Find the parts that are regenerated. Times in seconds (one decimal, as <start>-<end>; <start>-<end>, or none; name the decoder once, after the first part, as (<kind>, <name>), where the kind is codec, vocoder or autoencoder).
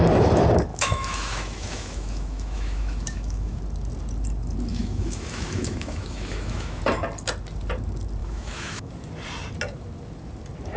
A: 0.7-3.6 (autoencoder, DAC-VAE); 4.7-6.8; 8.2-8.9